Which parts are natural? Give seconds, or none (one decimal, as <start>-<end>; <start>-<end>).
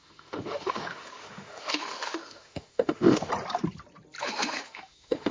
3.3-4.2